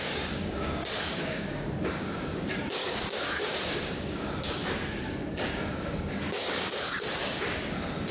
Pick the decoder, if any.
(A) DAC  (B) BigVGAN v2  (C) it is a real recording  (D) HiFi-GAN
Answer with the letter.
A